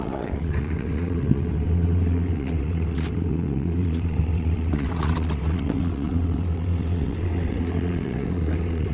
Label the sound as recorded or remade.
remade